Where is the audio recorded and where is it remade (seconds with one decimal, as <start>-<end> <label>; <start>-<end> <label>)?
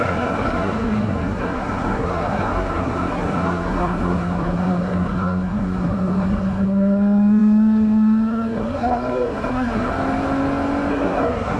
0.0-9.9 remade; 9.9-10.9 recorded; 10.9-11.6 remade